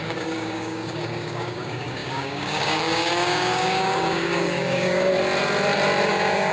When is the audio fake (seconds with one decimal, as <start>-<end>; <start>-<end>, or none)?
0.0-5.1; 6.1-6.5